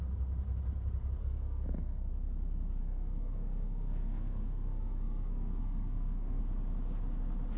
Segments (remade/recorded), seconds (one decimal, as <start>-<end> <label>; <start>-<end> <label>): 0.0-1.2 recorded; 1.2-2.1 remade; 2.1-2.8 recorded; 2.8-6.4 remade; 6.4-7.6 recorded